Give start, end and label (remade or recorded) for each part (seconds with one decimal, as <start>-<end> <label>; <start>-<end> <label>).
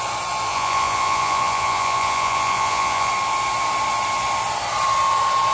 0.0-0.5 recorded; 0.5-3.1 remade; 3.1-5.5 recorded